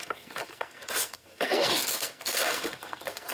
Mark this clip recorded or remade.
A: remade